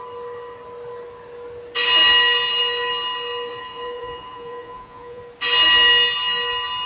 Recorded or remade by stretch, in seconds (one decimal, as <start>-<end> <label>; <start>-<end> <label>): 0.0-3.5 recorded; 3.5-5.2 remade; 5.2-6.9 recorded